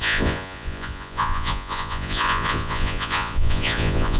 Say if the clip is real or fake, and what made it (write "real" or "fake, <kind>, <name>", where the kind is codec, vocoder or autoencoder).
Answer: fake, vocoder, Vocos